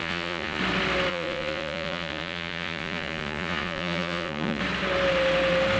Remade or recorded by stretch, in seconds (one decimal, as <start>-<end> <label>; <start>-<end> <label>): 0.0-0.6 remade; 0.6-1.1 recorded; 1.1-4.6 remade; 4.6-5.8 recorded